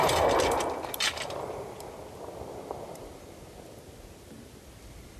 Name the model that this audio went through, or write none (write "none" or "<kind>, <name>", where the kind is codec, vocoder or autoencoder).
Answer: none